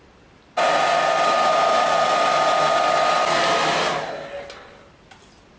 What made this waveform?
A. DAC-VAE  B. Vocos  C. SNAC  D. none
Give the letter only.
D